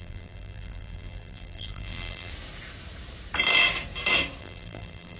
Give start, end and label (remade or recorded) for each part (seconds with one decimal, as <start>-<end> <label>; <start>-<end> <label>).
0.0-2.3 remade; 2.3-4.4 recorded; 4.4-5.2 remade